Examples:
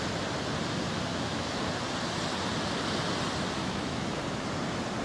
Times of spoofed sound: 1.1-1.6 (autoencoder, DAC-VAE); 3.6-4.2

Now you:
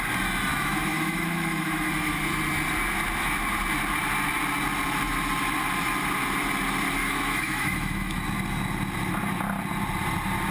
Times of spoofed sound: 0.5-2.2 (autoencoder, DAC-VAE); 7.0-8.2

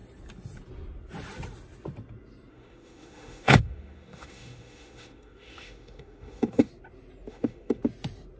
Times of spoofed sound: 2.5-6.7 (autoencoder, DAC-VAE); 7.3-7.8

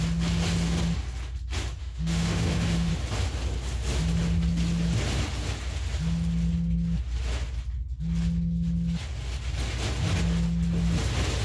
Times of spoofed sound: 1.8-2.9 (autoencoder, DAC-VAE)

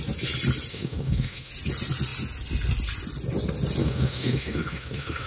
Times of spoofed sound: 0.7-1.5 (autoencoder, DAC-VAE); 3.8-5.3

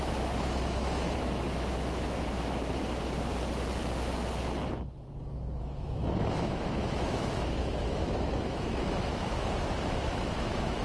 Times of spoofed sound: 0.0-2.8 (autoencoder, DAC-VAE); 5.6-10.8